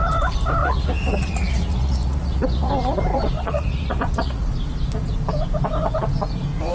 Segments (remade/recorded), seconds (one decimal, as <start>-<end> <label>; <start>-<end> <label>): 0.0-0.6 recorded; 0.6-2.7 remade; 2.7-3.1 recorded; 3.1-4.5 remade; 4.5-6.7 recorded